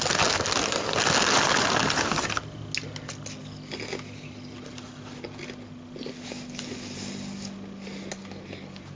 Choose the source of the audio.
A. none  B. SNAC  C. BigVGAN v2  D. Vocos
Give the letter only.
A